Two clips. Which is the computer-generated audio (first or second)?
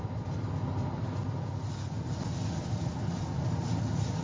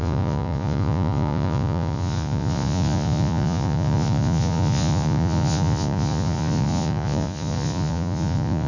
second